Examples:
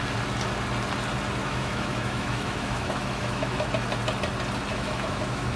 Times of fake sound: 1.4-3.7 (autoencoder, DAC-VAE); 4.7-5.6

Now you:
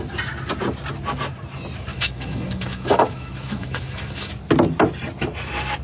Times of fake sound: 1.9-4.3 (autoencoder, DAC-VAE)